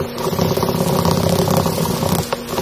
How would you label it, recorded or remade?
recorded